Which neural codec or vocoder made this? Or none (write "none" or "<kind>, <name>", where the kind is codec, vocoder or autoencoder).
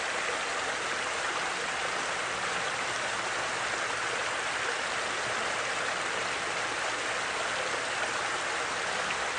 none